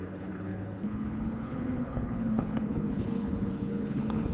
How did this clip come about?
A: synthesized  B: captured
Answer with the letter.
A